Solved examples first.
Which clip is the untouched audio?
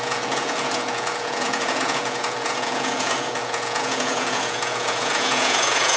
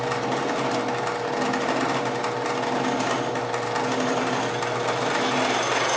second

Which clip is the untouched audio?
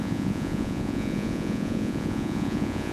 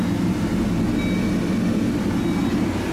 second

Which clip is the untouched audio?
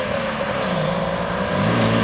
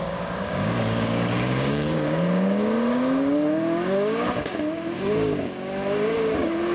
first